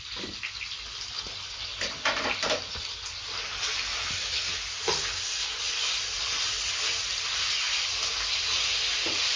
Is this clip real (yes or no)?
yes